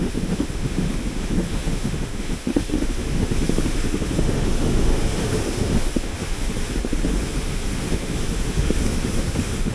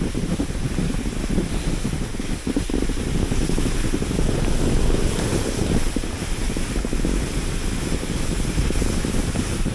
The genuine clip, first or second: second